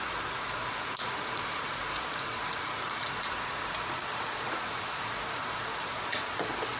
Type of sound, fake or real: fake